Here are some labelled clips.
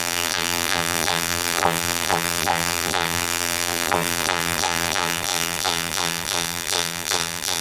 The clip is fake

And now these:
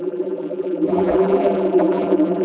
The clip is fake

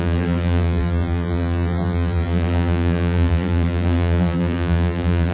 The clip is fake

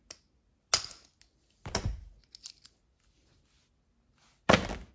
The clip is real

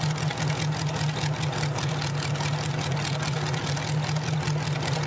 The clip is real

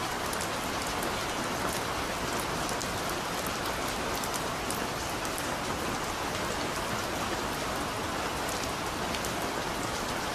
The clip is real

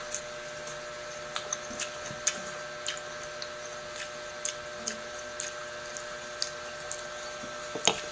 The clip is real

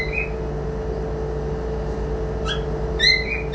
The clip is real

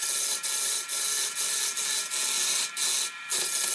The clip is real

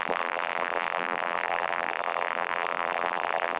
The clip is fake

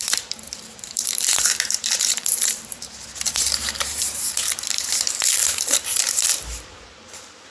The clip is fake